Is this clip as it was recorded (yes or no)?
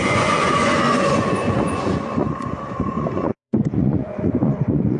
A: no